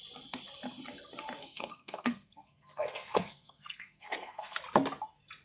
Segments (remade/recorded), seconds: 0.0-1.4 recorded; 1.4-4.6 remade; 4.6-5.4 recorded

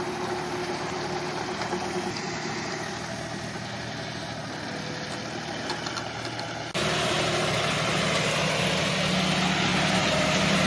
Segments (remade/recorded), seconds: 0.0-0.6 recorded; 0.6-1.1 remade; 1.1-9.7 recorded; 9.7-10.7 remade